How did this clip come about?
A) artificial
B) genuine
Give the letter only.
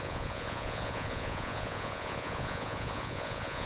A